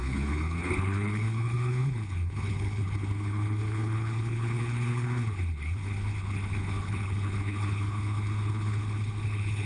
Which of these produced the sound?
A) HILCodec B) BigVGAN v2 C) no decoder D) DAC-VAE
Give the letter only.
A